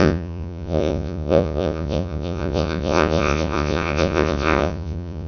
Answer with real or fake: fake